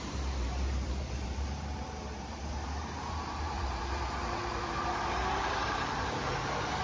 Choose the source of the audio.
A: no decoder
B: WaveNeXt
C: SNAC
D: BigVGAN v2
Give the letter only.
D